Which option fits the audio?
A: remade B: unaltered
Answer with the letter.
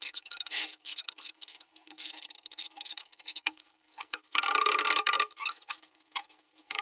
A